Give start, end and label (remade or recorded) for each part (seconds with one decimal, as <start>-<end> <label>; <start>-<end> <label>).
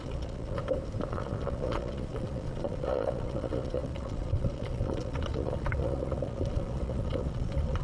0.0-0.6 remade; 0.6-1.1 recorded; 1.1-7.8 remade